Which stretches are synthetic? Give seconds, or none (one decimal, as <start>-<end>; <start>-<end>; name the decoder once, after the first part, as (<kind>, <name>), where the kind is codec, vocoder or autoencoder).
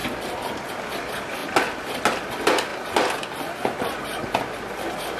0.0-0.7 (vocoder, BigVGAN v2)